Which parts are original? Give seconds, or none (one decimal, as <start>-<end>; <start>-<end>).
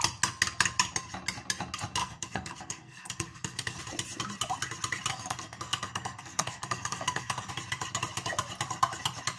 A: 0.0-2.0; 3.8-5.1; 7.5-9.4